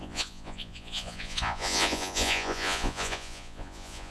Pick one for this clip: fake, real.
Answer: fake